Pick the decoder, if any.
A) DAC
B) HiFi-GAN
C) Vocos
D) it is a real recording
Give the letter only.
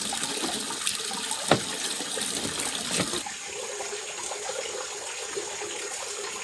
D